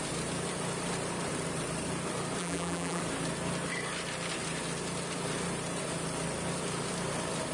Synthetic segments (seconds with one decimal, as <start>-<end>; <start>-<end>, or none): 2.4-3.0